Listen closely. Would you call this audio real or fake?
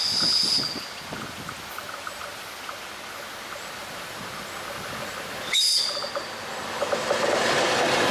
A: real